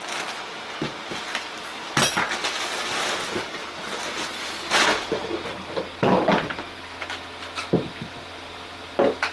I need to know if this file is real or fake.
real